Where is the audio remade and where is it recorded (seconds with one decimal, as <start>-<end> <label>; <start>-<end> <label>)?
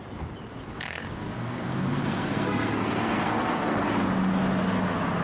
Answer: 0.0-0.7 recorded; 0.7-3.8 remade; 3.8-5.2 recorded